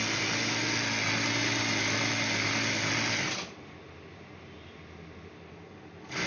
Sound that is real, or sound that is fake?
real